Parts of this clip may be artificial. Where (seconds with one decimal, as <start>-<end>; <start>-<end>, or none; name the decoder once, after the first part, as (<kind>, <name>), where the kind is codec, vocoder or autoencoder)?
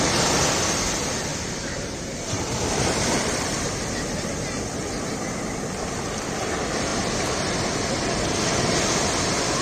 1.3-3.7 (vocoder, BigVGAN v2)